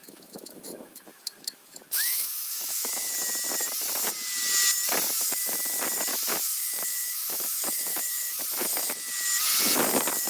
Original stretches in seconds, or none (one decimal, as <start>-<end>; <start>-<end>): 3.1-6.1; 9.1-10.3